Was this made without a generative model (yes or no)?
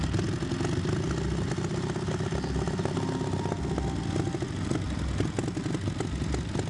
yes